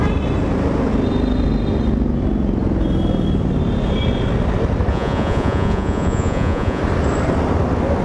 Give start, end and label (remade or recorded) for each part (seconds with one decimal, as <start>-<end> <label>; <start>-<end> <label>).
0.0-4.9 recorded; 4.9-6.8 remade; 6.8-8.0 recorded